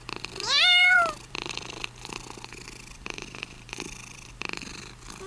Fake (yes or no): yes